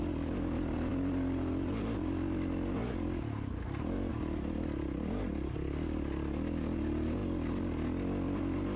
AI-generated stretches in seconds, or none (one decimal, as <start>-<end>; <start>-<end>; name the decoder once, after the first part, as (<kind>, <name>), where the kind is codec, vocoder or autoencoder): none